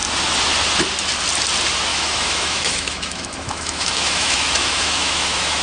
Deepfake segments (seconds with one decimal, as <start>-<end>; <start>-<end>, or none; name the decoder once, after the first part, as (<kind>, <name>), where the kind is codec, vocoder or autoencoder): 1.9-5.6 (autoencoder, DAC-VAE)

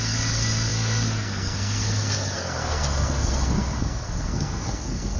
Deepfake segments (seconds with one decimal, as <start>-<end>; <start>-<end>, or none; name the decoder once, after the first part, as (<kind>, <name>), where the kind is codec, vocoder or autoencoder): 0.0-5.2 (codec, SNAC)